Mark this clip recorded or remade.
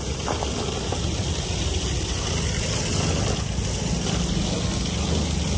recorded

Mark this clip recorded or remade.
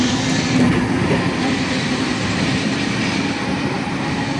remade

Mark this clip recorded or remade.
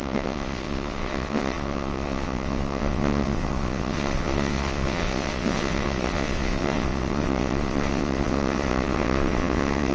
remade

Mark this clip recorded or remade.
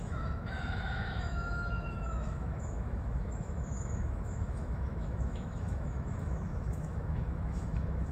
remade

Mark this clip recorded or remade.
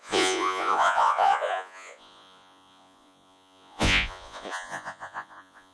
remade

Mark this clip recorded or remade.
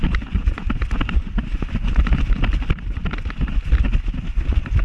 recorded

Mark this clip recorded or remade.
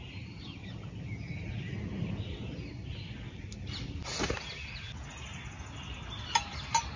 recorded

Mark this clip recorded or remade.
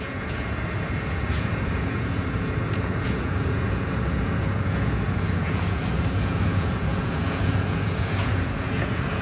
remade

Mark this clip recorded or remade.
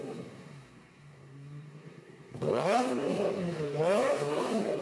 remade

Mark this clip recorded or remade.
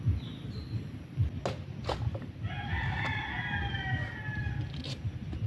recorded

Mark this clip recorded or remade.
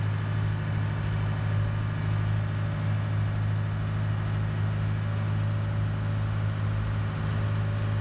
recorded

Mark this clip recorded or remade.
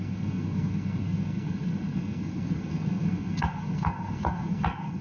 remade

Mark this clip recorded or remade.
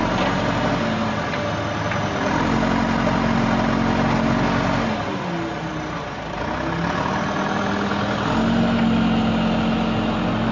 recorded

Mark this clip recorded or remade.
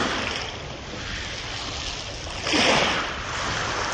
recorded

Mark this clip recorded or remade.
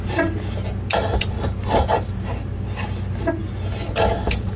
recorded